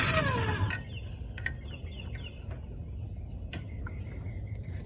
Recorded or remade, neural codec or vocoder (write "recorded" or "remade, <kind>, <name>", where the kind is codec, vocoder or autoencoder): recorded